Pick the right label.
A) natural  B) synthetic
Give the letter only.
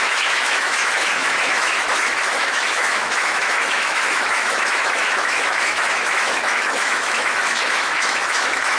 B